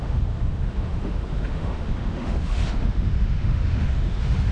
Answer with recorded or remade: remade